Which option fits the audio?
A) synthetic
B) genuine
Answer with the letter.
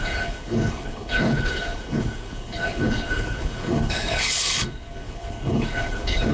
A